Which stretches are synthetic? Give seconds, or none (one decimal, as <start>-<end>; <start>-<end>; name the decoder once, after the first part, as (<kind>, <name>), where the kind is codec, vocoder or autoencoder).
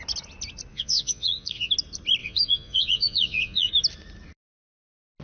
0.7-1.7 (vocoder, Vocos); 2.2-3.7